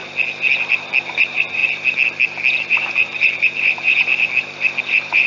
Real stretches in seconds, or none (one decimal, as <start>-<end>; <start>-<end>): 0.0-1.1; 1.6-2.7; 4.1-4.8